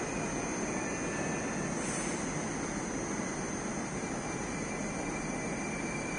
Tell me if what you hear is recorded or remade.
recorded